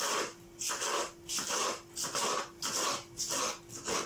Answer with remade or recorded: recorded